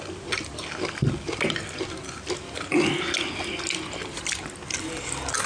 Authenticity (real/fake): real